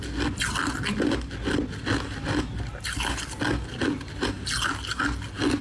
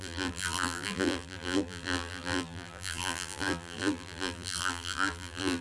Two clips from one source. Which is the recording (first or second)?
first